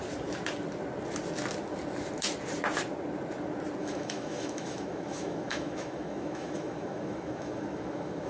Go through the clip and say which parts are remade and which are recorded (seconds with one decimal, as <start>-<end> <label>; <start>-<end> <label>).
0.0-3.8 recorded; 3.8-8.3 remade